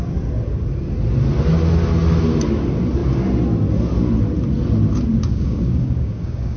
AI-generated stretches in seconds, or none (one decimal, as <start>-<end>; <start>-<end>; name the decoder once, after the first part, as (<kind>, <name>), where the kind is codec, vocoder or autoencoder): 5.3-6.6 (codec, DAC)